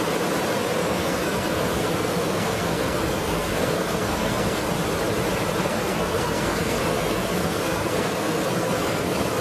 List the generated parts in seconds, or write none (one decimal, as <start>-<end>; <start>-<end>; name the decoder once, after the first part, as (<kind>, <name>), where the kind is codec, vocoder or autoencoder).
0.8-4.7 (codec, SNAC); 5.6-9.4